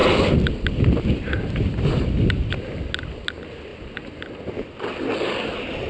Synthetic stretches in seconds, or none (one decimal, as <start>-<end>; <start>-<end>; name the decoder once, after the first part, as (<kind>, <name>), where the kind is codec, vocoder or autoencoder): none